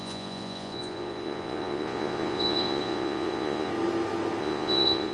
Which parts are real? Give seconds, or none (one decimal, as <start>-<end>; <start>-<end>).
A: 3.7-4.4